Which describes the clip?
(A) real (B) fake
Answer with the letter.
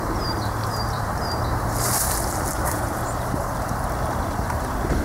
B